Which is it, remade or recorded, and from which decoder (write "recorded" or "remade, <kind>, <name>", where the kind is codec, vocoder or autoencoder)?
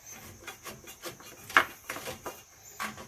recorded